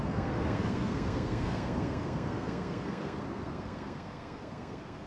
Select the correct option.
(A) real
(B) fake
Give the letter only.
B